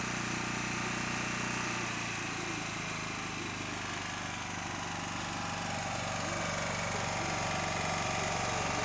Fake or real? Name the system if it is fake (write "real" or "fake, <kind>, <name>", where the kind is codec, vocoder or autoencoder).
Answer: real